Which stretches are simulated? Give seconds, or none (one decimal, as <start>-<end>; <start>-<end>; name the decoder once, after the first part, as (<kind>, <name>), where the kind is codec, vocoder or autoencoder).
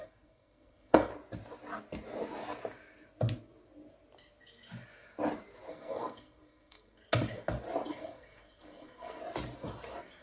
0.0-1.1 (codec, SNAC); 5.7-7.0; 7.9-9.2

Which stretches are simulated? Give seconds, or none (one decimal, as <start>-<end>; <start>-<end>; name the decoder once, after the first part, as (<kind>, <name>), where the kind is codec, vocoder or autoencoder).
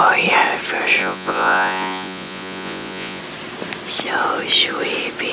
1.0-3.2 (vocoder, Vocos)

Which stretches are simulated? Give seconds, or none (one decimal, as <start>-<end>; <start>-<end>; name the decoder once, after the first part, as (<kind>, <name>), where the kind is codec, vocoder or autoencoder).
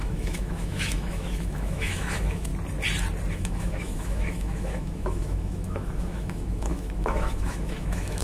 0.0-2.5 (autoencoder, DAC-VAE); 3.3-8.2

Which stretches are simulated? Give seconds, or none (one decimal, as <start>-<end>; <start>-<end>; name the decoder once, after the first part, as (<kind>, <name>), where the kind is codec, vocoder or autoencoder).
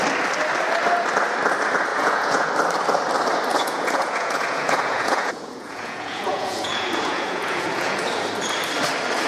1.9-2.5 (vocoder, Vocos); 3.5-8.0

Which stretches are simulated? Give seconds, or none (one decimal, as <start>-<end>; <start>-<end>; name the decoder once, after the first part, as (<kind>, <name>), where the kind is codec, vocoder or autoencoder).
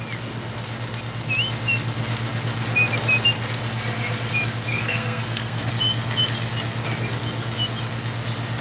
4.7-5.7 (codec, SNAC)